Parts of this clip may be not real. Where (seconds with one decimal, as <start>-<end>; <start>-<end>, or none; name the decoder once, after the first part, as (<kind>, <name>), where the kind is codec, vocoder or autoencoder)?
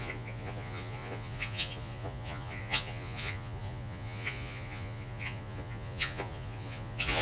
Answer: 0.0-7.2 (vocoder, Vocos)